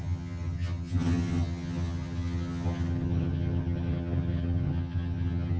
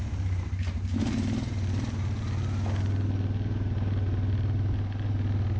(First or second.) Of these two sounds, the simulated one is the first